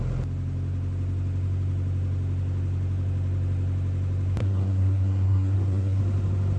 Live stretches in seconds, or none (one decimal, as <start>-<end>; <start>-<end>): 0.0-4.4; 6.0-6.6